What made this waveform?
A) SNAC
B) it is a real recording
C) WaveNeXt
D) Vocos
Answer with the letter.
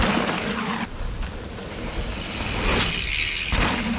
B